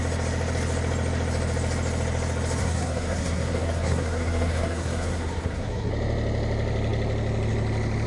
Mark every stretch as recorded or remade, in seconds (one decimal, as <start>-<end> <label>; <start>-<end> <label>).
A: 0.0-2.6 recorded; 2.6-5.9 remade; 5.9-8.1 recorded